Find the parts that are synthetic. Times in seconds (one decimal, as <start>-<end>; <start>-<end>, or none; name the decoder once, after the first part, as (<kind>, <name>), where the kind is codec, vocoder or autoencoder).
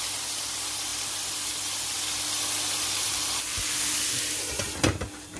none